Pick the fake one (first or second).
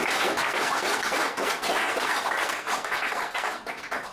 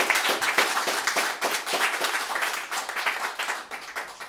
first